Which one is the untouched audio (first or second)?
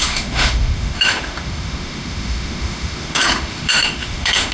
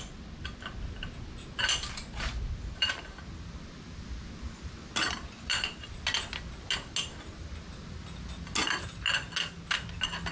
second